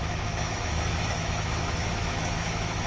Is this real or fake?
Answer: fake